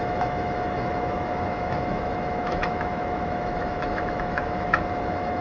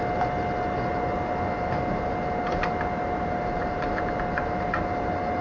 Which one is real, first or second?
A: second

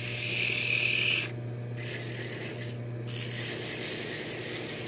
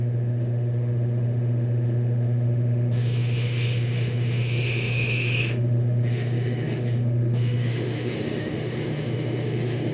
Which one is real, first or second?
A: first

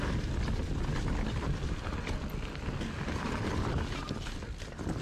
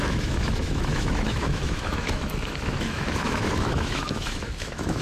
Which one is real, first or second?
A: first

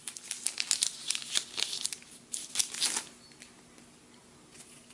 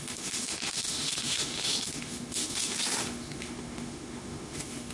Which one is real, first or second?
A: first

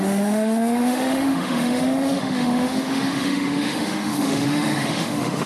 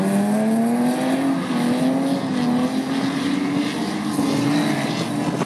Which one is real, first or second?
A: second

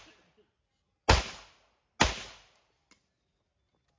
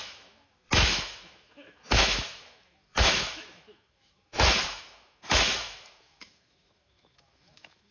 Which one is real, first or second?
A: first